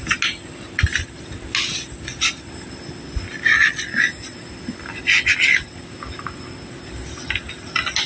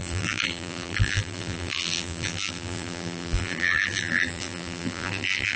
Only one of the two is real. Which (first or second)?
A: first